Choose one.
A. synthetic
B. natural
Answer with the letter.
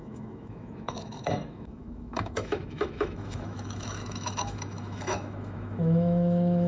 A